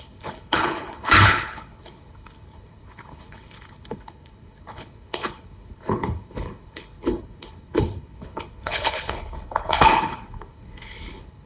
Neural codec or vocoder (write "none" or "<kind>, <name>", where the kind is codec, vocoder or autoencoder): codec, HILCodec